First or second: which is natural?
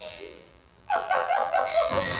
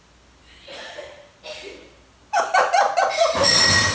second